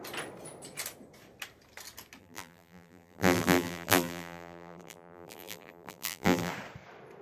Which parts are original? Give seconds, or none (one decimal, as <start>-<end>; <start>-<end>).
0.0-2.2; 6.5-7.2

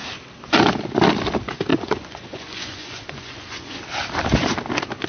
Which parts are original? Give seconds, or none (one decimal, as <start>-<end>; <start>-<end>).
0.0-1.7; 3.8-5.1

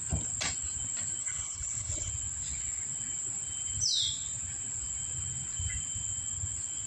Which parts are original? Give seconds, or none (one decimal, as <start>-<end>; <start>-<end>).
0.0-1.2; 2.1-6.9

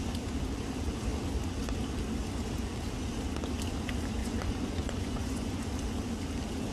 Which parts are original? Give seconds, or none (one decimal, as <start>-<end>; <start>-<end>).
0.0-4.2; 5.6-6.7

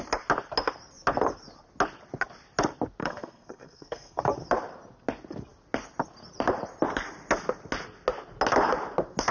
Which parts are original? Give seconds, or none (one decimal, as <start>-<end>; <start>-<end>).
0.0-3.0; 4.2-9.3

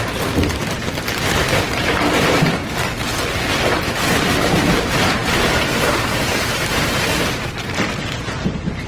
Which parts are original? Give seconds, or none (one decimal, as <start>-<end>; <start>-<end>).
0.6-1.4; 2.6-4.4

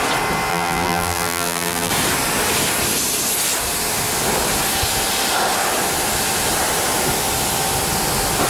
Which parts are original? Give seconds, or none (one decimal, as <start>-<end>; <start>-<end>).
0.0-0.5; 1.9-8.5